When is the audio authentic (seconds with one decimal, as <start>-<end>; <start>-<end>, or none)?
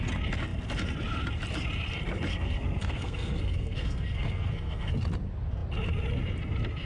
0.0-2.3; 4.9-6.9